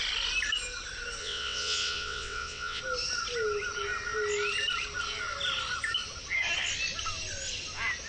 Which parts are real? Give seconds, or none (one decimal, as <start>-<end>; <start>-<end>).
0.0-1.2; 2.8-8.1